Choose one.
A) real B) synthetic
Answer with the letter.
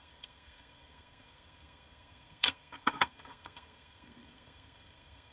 B